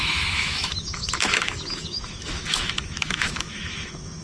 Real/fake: fake